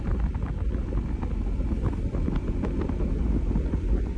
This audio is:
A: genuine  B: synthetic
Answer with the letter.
B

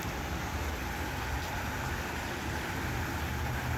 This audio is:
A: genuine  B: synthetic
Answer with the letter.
A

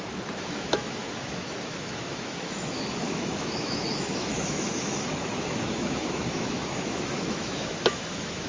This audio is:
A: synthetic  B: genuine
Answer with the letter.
A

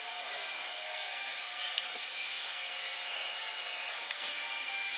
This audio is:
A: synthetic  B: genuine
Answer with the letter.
A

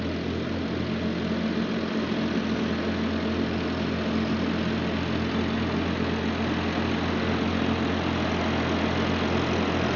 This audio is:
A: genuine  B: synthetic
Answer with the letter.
A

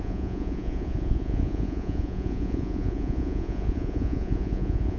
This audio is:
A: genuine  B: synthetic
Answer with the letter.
B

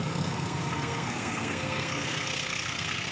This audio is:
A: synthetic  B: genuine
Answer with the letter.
A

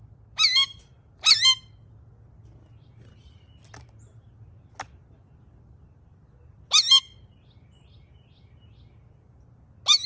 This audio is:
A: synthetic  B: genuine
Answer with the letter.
B